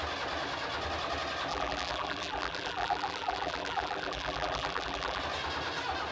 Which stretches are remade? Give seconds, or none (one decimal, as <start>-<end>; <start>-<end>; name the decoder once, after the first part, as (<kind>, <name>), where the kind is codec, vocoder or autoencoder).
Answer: 1.5-5.2 (vocoder, BigVGAN v2)